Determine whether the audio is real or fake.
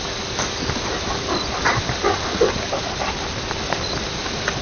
real